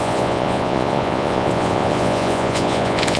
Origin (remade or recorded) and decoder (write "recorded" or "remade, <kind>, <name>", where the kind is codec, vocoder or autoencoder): remade, vocoder, Vocos